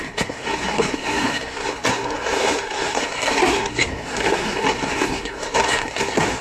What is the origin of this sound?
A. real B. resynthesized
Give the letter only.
B